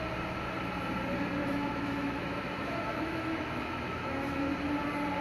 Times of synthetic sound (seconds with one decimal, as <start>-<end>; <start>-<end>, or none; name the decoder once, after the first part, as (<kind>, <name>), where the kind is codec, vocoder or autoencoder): 1.4-4.5 (autoencoder, DAC-VAE)